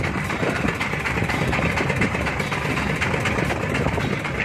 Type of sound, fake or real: fake